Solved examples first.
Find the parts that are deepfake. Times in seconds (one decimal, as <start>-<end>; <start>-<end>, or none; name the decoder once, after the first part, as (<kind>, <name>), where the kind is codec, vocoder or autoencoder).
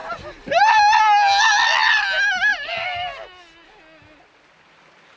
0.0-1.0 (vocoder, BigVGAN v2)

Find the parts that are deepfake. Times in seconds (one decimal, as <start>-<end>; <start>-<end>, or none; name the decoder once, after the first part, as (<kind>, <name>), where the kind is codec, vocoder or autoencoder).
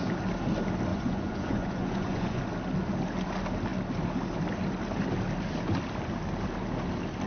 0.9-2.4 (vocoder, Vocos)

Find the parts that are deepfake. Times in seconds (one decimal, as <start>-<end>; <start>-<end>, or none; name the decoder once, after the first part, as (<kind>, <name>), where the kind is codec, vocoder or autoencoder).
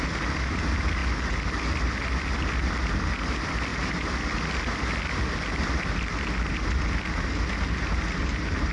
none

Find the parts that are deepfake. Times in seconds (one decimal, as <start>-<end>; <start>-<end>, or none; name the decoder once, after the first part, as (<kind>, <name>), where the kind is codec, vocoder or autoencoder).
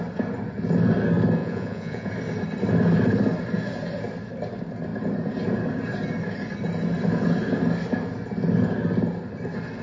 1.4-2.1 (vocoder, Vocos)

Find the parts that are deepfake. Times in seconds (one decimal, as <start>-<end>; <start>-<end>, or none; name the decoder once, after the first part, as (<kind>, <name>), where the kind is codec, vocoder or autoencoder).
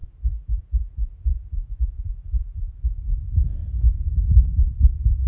0.0-5.3 (vocoder, BigVGAN v2)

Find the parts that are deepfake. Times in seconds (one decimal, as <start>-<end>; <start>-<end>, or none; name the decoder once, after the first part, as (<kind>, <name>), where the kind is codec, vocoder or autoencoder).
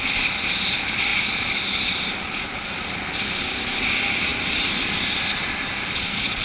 1.1-2.5 (vocoder, BigVGAN v2); 4.3-5.5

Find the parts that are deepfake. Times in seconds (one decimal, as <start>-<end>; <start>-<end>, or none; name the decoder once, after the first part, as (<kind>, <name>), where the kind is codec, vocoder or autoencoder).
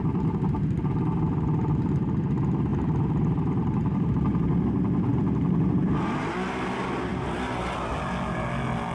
2.7-4.1 (vocoder, BigVGAN v2); 5.1-6.3